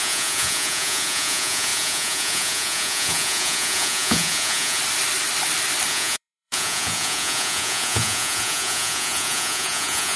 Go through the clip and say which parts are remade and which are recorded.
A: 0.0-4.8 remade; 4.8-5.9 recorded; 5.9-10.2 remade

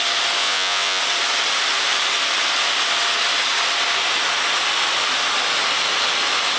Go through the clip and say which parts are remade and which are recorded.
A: 0.0-0.4 recorded; 0.4-1.0 remade; 1.0-6.6 recorded

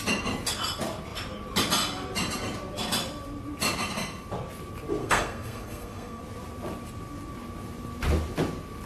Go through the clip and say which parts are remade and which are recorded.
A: 0.0-5.0 recorded; 5.0-6.2 remade; 6.2-8.9 recorded

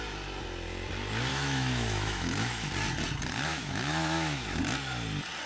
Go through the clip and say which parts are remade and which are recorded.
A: 0.0-1.3 recorded; 1.3-2.7 remade; 2.7-3.5 recorded; 3.5-4.6 remade; 4.6-5.5 recorded

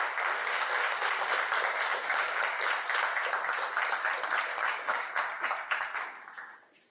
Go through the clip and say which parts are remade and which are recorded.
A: 0.0-0.4 recorded; 0.4-1.4 remade; 1.4-1.9 recorded; 1.9-2.4 remade; 2.4-4.5 recorded; 4.5-5.1 remade; 5.1-6.9 recorded

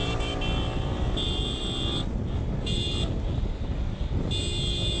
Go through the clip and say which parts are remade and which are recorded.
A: 0.0-5.0 recorded

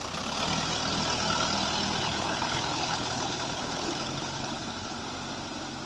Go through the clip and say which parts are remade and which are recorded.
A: 0.0-2.0 recorded; 2.0-5.0 remade; 5.0-5.9 recorded

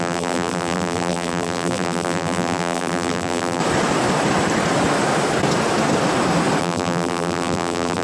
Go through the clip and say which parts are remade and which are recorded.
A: 0.0-3.6 remade; 3.6-6.6 recorded; 6.6-8.0 remade